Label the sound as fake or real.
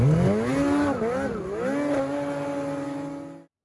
real